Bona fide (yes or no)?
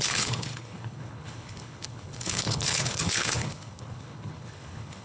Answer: no